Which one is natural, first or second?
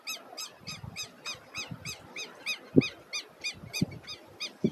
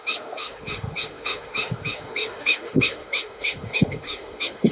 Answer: first